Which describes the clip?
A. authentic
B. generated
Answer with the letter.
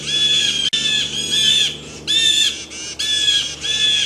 A